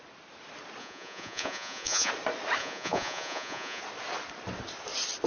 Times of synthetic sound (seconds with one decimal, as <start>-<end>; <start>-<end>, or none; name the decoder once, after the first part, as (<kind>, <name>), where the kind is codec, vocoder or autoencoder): 0.8-2.1 (vocoder, Vocos); 2.6-3.8